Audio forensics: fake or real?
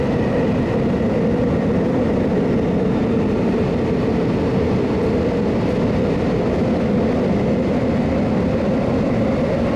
real